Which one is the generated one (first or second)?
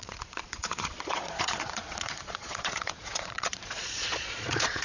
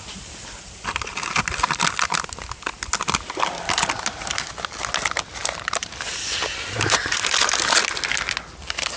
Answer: first